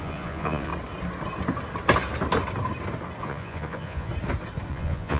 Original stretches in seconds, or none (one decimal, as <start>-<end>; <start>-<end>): 0.7-3.2; 4.1-4.7

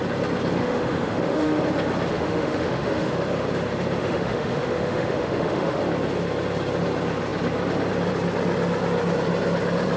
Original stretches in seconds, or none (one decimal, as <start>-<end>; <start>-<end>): 0.0-0.6; 1.6-2.1; 3.1-4.0; 5.8-10.0

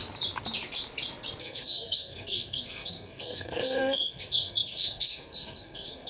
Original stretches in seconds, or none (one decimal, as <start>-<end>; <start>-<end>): 0.0-1.4

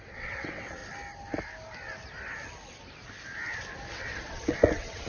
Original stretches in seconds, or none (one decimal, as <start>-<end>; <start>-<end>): 0.8-3.9

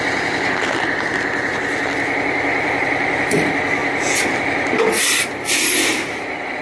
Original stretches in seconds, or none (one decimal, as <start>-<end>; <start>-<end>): 0.0-2.5; 3.2-6.6

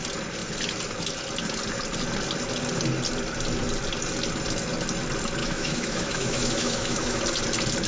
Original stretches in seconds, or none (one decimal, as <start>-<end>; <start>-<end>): 0.0-5.4; 7.2-7.9

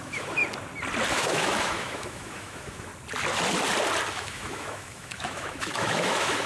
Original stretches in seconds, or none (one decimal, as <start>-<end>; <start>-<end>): 0.4-1.1; 2.9-4.1

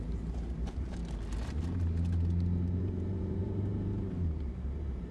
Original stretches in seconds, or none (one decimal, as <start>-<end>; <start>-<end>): 1.0-2.8